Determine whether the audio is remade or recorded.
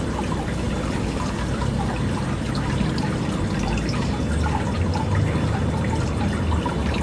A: recorded